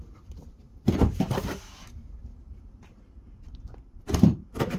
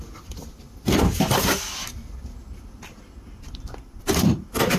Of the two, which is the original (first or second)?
second